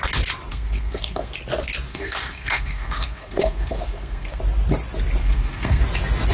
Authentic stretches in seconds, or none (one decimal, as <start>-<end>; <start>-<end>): 0.0-0.5; 1.3-1.9; 4.4-5.2; 5.8-6.3